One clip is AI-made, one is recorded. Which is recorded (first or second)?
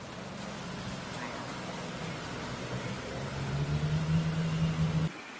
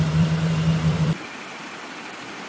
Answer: first